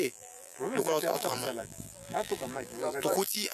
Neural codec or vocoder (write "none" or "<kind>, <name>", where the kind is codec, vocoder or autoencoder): vocoder, BigVGAN v2